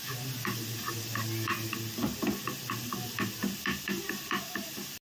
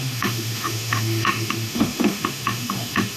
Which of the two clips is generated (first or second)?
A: second